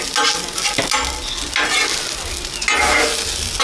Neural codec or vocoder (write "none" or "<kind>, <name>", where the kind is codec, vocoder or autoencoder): none